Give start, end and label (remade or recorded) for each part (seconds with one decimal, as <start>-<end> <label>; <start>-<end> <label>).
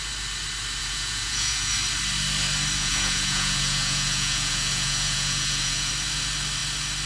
0.0-0.8 recorded; 0.8-1.7 remade; 1.7-2.8 recorded; 2.8-5.9 remade; 5.9-7.1 recorded